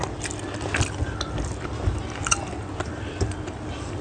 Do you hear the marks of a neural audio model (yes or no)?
no